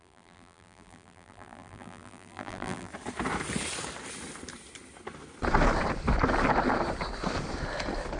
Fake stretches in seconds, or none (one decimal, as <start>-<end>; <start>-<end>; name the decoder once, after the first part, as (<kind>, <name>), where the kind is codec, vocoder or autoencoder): 0.0-2.9 (vocoder, BigVGAN v2)